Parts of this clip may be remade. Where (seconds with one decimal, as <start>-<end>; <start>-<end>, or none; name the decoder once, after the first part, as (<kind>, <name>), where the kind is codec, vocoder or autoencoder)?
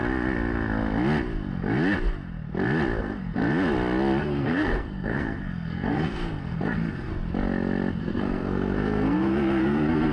3.0-3.4 (codec, SNAC); 4.2-7.1; 8.0-10.1